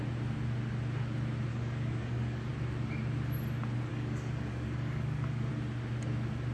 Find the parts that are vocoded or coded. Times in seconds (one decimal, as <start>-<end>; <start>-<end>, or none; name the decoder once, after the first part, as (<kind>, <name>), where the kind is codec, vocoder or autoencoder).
1.5-2.5 (codec, DAC); 3.9-5.5

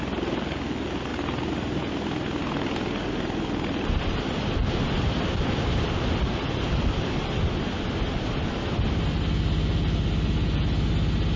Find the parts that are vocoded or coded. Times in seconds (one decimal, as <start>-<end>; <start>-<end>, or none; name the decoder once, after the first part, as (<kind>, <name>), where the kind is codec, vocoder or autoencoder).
none

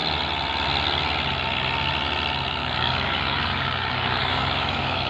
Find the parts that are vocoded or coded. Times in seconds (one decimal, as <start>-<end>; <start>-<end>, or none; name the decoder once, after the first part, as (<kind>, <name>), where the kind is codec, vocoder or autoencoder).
2.6-5.1 (codec, DAC)

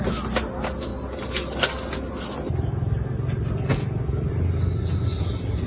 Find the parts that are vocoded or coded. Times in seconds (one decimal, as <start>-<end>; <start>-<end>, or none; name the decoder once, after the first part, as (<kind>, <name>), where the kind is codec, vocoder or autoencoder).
none

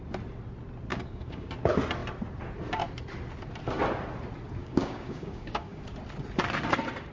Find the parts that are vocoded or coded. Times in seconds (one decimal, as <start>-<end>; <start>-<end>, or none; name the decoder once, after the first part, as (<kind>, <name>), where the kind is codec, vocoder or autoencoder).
0.9-1.5 (codec, DAC); 4.6-5.8